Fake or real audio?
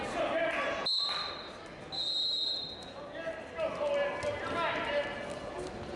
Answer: real